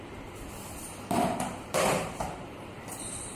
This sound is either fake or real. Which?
fake